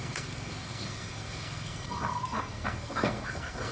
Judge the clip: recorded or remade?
remade